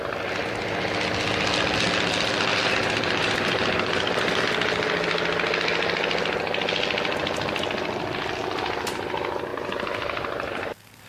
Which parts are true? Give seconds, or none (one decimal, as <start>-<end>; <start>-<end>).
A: 0.0-2.5; 4.4-9.5; 10.7-11.1